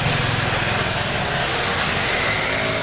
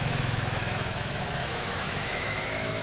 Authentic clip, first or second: first